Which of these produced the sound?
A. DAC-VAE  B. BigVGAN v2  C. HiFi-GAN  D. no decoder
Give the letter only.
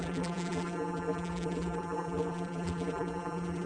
B